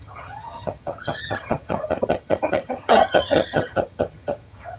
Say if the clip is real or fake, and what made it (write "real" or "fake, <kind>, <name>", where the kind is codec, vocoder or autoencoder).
fake, vocoder, HiFi-GAN